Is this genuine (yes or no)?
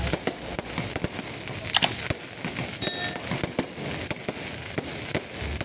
yes